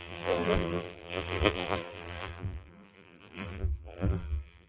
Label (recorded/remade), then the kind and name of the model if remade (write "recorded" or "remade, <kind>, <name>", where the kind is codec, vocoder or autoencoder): remade, vocoder, BigVGAN v2